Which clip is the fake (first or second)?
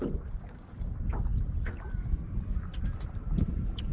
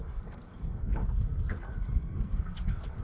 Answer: second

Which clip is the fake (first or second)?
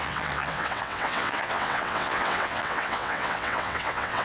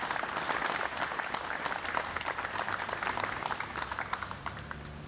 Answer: first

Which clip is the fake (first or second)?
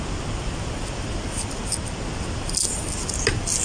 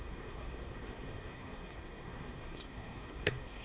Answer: second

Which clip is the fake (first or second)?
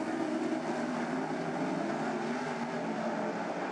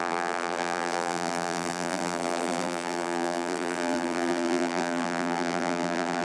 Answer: second